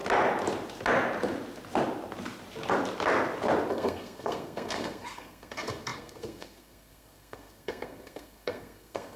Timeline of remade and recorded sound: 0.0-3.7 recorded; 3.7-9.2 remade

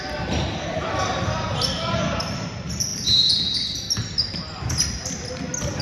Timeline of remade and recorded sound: 0.0-5.8 recorded